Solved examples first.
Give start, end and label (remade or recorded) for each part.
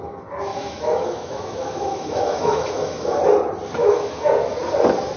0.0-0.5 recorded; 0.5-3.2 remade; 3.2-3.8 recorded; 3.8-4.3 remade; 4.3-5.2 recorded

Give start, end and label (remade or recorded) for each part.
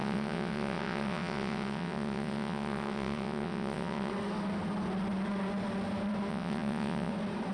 0.0-4.1 remade; 4.1-6.3 recorded; 6.3-7.1 remade; 7.1-7.5 recorded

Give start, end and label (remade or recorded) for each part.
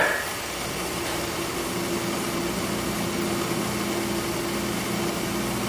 0.0-5.7 recorded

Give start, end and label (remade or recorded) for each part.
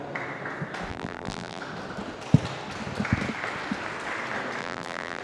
0.0-0.9 recorded; 0.9-1.6 remade; 1.6-4.6 recorded; 4.6-5.2 remade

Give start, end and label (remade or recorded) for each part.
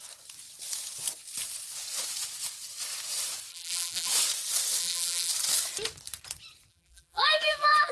0.0-3.5 recorded; 3.5-4.1 remade; 4.1-4.8 recorded; 4.8-5.3 remade; 5.3-6.7 recorded; 6.7-7.9 remade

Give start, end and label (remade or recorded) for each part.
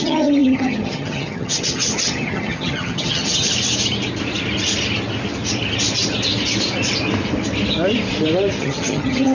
0.0-3.5 remade; 3.5-8.6 recorded; 8.6-9.3 remade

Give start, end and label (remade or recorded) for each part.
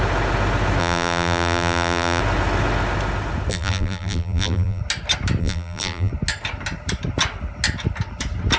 0.0-0.8 recorded; 0.8-2.2 remade; 2.2-3.5 recorded; 3.5-4.8 remade; 4.8-5.4 recorded; 5.4-6.1 remade; 6.1-8.6 recorded